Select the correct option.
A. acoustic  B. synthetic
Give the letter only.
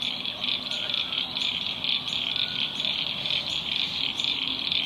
A